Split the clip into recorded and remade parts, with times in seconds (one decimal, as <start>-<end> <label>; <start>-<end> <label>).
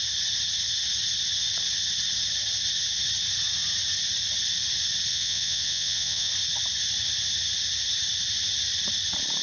0.0-5.1 recorded; 5.1-6.3 remade; 6.3-9.4 recorded